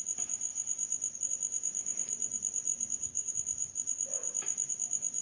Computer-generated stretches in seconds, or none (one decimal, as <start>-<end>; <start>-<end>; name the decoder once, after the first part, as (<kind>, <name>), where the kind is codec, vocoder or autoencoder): 2.7-3.3 (codec, DAC)